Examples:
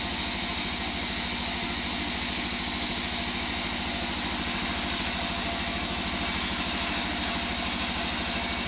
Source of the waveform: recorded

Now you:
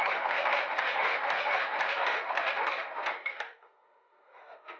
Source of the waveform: remade